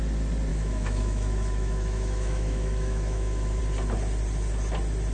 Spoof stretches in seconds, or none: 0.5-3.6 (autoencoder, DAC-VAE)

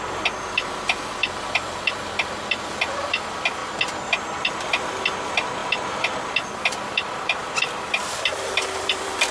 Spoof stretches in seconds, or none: 0.0-3.6 (vocoder, BigVGAN v2); 4.5-5.6; 6.5-7.4; 8.0-9.3

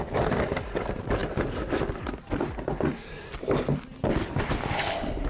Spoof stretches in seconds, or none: none

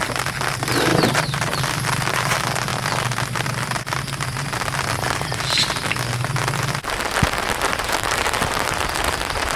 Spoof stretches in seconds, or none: 0.9-1.6 (vocoder, BigVGAN v2); 7.7-9.1

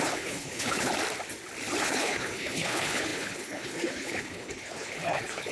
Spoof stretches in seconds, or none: 0.0-0.9 (codec, HILCodec); 1.8-5.5

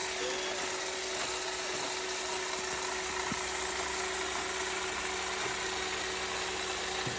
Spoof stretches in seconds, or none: none

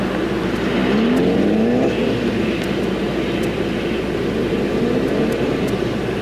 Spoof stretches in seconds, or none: none

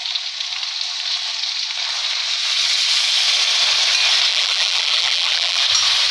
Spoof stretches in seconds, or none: 4.3-5.6 (vocoder, BigVGAN v2)